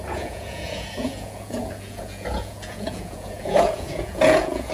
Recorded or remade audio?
remade